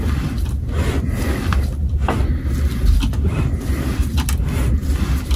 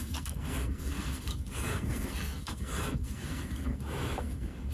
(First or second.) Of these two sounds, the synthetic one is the second